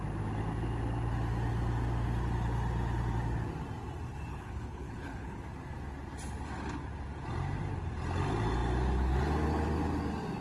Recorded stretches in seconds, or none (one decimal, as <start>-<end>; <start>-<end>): 0.0-4.3; 5.4-10.4